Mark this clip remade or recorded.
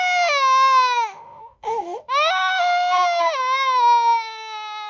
remade